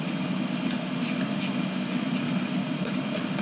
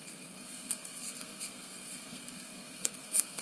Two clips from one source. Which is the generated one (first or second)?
second